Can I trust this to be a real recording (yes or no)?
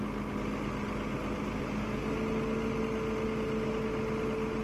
yes